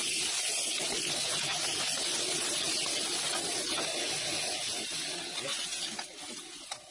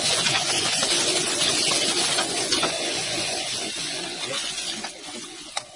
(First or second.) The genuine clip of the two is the first